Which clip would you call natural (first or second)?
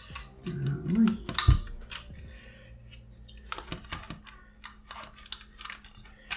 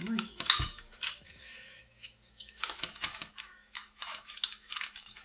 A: first